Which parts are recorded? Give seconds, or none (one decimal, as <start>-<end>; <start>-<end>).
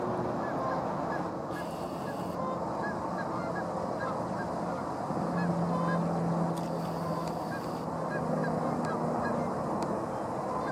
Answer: 0.0-10.7